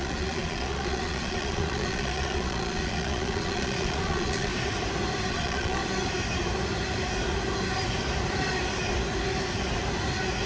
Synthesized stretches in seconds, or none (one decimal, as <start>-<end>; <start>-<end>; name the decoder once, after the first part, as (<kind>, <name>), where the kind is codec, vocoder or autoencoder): 0.0-4.5 (vocoder, Vocos); 5.3-5.8